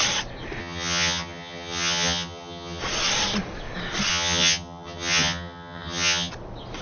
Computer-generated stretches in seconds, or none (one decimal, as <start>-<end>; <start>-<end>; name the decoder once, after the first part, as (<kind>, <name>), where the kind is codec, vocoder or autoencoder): 0.6-2.8 (vocoder, HiFi-GAN); 4.1-6.3